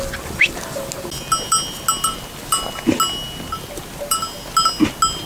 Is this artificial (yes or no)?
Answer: no